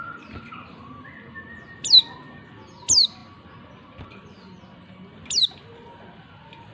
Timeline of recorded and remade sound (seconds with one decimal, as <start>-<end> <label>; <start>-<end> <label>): 0.0-6.7 recorded